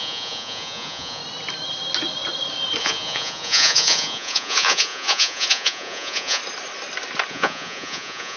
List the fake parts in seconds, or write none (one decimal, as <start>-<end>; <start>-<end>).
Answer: 0.0-1.2; 2.8-6.4; 7.3-8.4